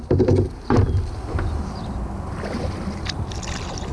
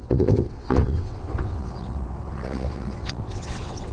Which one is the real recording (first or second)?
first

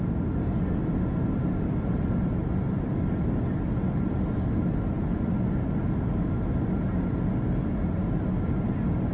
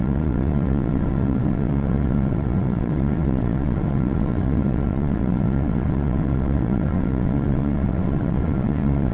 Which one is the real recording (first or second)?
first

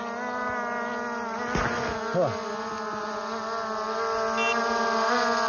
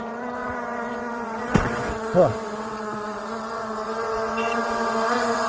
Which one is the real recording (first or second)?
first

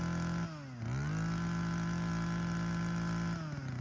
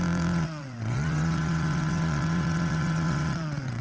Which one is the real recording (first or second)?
first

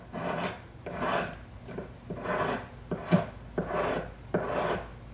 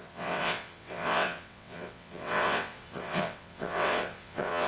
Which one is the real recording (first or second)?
first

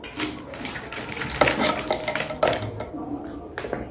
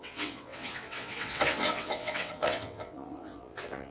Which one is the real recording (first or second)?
first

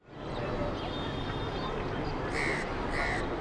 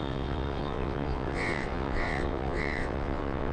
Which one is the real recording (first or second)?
first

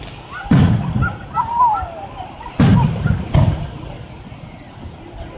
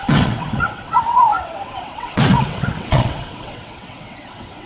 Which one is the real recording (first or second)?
first